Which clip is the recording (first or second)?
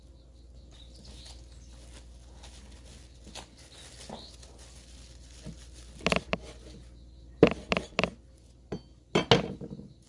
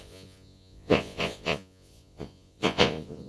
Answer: first